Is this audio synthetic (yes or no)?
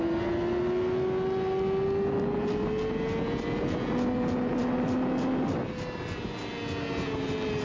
no